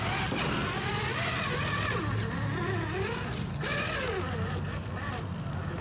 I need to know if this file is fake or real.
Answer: real